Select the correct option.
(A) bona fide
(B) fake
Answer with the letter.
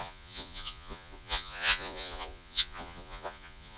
B